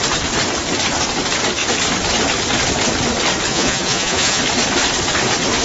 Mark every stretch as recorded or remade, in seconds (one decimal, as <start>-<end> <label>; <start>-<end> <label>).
0.0-3.5 recorded; 3.5-4.4 remade; 4.4-5.6 recorded